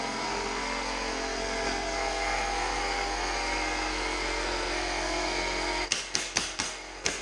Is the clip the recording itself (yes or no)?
no